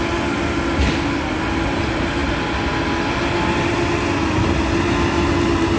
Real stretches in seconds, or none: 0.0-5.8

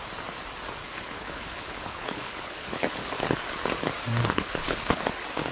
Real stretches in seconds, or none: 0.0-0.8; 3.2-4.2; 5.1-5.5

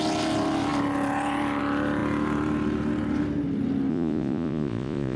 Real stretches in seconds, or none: 0.0-3.9